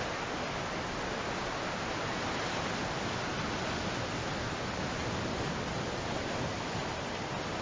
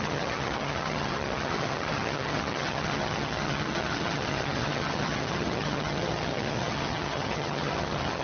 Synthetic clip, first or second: second